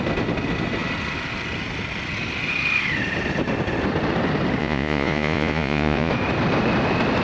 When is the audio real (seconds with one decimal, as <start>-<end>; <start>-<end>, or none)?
0.0-4.6; 6.1-7.2